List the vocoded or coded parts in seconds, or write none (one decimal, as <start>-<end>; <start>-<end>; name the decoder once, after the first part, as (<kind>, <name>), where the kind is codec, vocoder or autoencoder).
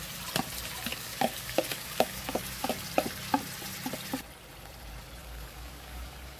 0.9-2.7 (codec, DAC); 5.2-6.4